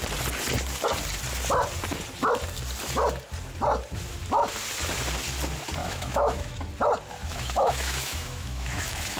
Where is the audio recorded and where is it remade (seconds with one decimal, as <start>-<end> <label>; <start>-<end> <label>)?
0.0-5.8 recorded; 5.8-6.6 remade; 6.6-7.2 recorded; 7.2-9.2 remade